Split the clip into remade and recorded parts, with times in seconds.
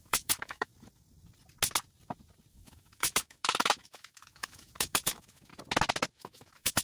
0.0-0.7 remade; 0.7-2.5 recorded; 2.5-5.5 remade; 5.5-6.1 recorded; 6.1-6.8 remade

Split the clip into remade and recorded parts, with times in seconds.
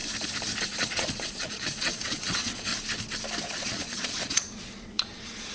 0.0-0.6 recorded; 0.6-2.7 remade; 2.7-3.6 recorded; 3.6-5.5 remade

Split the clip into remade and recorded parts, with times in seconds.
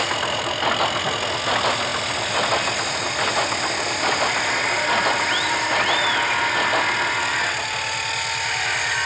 0.0-1.9 recorded; 1.9-5.2 remade; 5.2-9.1 recorded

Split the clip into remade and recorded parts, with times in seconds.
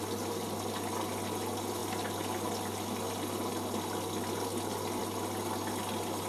0.0-6.3 recorded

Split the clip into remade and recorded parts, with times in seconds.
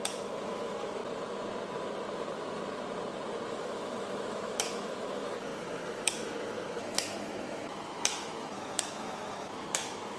0.0-1.0 remade; 1.0-3.5 recorded; 3.5-10.2 remade